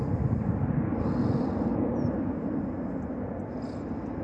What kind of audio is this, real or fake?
real